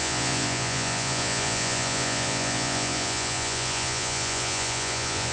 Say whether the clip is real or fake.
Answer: fake